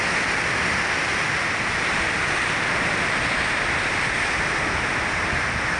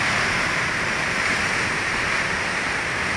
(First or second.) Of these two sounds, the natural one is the first